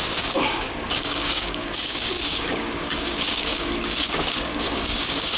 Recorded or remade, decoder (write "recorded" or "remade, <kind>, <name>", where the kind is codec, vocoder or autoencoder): remade, codec, DAC